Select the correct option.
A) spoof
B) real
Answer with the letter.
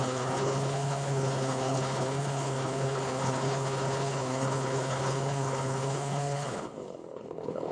A